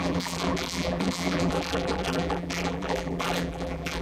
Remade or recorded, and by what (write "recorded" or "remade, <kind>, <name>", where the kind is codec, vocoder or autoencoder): remade, vocoder, BigVGAN v2